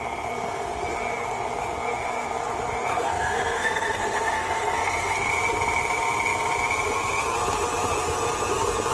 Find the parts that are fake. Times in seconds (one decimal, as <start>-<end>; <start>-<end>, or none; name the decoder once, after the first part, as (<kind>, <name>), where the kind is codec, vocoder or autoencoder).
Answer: 2.9-5.3 (codec, SNAC)